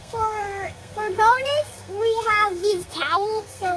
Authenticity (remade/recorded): remade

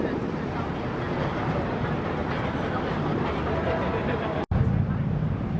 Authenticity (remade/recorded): recorded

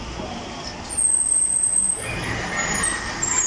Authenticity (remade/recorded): recorded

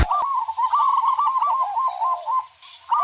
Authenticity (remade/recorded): recorded